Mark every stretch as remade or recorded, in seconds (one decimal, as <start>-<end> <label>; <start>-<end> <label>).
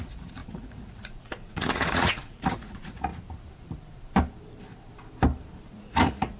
0.0-3.1 remade; 3.1-5.6 recorded; 5.6-6.4 remade